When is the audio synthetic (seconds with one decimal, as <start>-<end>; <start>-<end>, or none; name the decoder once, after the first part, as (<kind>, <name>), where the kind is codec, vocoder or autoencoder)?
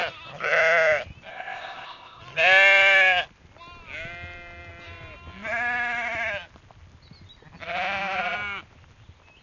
1.3-2.2 (codec, ZipCodec)